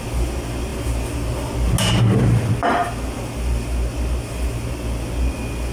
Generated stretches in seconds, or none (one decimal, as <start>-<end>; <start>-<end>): none